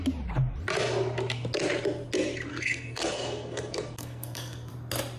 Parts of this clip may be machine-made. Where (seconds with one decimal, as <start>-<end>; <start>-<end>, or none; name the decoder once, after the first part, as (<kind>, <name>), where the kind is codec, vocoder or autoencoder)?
2.5-4.7 (codec, SNAC)